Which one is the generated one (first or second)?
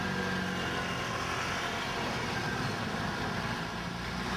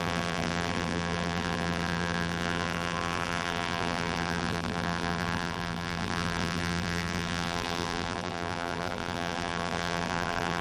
second